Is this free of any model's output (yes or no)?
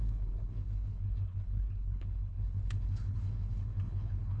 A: no